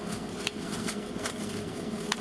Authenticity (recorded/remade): remade